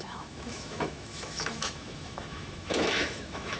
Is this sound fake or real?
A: fake